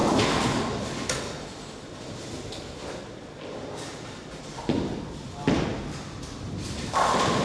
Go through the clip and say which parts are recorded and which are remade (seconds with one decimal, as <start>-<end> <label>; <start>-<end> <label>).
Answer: 0.0-7.4 recorded